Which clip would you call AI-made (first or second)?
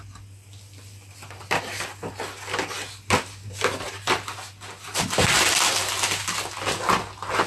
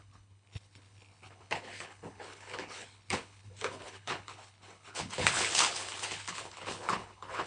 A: second